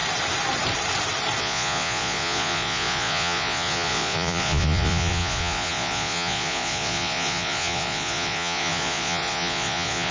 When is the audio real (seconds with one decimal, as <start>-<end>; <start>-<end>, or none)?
0.0-1.4